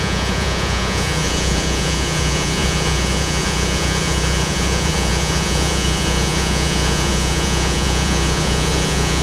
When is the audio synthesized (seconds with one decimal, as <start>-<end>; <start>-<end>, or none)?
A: 0.0-9.2